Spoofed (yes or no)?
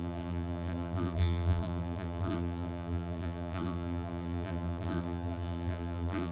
yes